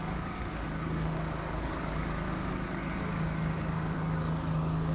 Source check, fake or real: fake